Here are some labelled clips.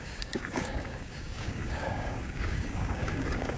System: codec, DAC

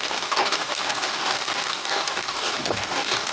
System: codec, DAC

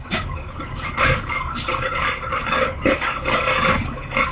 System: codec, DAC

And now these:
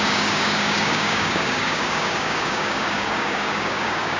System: codec, DAC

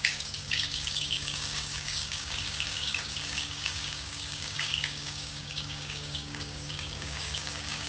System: codec, DAC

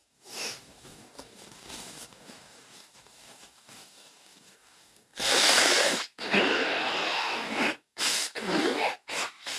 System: codec, DAC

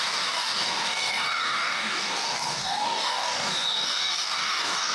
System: codec, DAC